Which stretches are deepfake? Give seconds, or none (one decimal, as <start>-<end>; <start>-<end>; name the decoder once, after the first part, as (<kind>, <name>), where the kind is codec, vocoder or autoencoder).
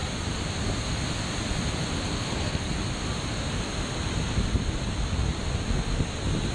2.1-2.6 (codec, SNAC)